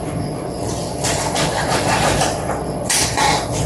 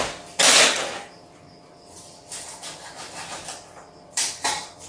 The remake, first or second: first